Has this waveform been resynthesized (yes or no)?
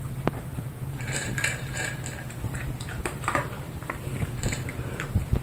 yes